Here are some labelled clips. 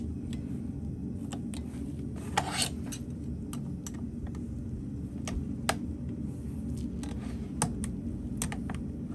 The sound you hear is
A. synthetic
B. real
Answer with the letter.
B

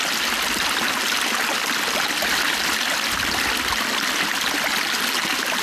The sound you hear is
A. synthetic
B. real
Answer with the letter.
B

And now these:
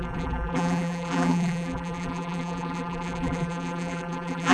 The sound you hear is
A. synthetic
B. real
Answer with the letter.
A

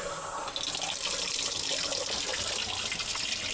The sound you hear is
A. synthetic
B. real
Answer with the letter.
B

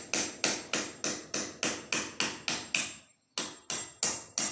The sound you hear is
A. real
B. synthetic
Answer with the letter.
A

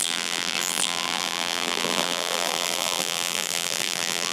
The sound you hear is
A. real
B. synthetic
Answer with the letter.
B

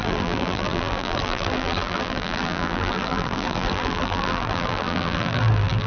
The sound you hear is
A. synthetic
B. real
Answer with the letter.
A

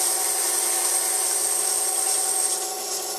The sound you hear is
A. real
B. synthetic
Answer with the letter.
A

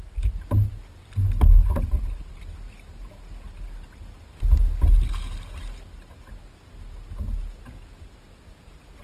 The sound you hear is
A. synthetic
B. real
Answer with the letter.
B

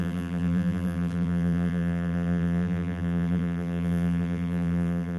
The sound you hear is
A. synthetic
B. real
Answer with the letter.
A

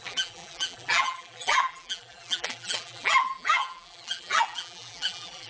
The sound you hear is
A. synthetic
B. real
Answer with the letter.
A